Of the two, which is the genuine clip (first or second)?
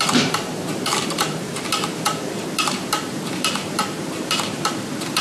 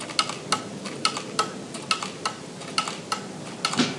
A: second